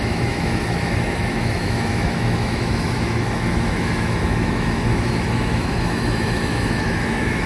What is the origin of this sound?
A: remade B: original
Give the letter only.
A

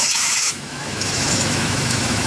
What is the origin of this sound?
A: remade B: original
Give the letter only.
A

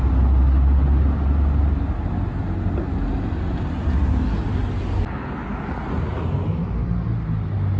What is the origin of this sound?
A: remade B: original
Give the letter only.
B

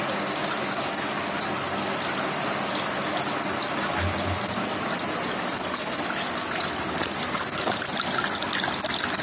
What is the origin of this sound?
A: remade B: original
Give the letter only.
B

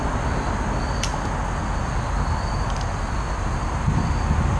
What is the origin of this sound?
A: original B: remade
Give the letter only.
A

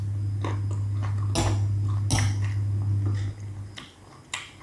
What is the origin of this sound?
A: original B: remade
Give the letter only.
A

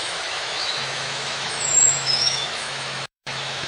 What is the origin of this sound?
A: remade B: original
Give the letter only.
A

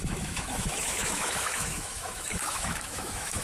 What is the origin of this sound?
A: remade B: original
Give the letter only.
A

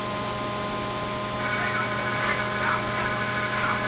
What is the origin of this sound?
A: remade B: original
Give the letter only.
B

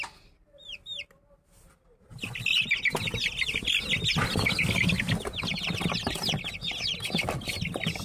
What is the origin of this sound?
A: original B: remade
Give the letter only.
A